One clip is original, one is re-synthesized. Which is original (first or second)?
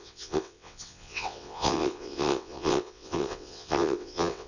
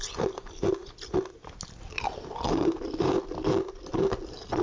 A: second